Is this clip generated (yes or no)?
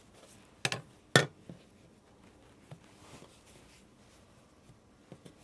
no